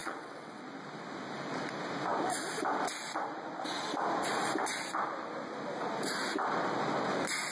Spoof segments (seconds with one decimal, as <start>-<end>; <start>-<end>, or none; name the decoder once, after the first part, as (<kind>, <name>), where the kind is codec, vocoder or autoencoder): 0.0-0.6 (vocoder, WaveNeXt)